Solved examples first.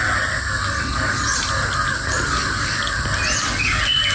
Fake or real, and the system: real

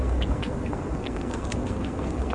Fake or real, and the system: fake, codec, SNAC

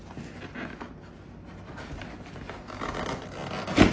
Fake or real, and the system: real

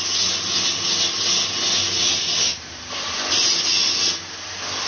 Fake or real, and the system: real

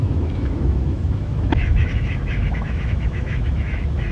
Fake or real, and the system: fake, autoencoder, DAC-VAE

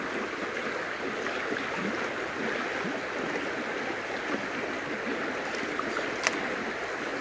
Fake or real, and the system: real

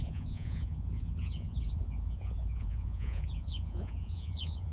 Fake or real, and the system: fake, vocoder, Vocos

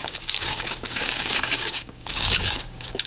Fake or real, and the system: fake, codec, DAC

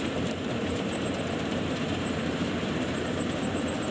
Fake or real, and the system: fake, vocoder, BigVGAN v2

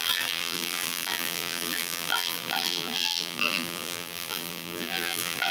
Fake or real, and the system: fake, vocoder, BigVGAN v2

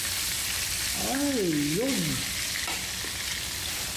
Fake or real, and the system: real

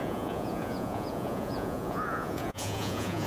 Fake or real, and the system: fake, vocoder, Vocos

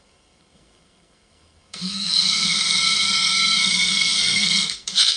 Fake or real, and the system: fake, codec, SNAC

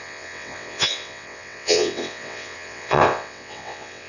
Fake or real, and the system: fake, vocoder, WaveNeXt